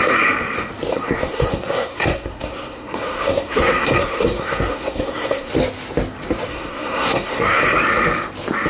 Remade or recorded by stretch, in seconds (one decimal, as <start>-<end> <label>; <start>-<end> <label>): 0.0-0.9 recorded; 0.9-5.5 remade; 5.5-6.5 recorded; 6.5-7.6 remade; 7.6-8.7 recorded